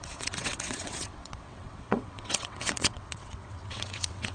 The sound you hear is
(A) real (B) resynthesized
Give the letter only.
B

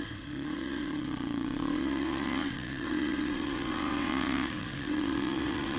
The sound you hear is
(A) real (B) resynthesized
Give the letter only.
B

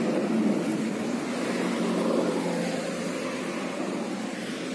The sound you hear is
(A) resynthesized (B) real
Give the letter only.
B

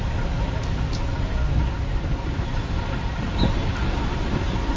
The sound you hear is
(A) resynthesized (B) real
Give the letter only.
B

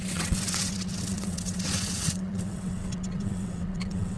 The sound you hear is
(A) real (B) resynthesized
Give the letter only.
B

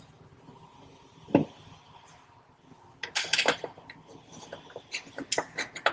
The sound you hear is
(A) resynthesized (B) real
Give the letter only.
B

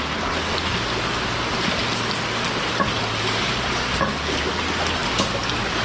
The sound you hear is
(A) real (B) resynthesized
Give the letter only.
A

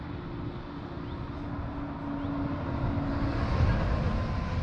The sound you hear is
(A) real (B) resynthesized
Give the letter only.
A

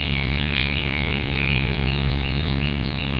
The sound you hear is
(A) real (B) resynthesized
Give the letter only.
B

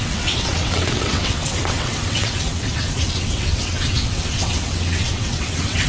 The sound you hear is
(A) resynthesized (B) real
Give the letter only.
A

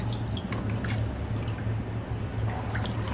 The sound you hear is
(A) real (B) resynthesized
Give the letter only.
A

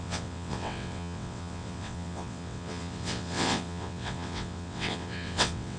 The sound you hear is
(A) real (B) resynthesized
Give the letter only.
B